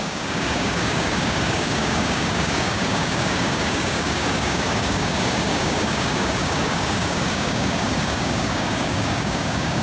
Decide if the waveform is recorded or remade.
remade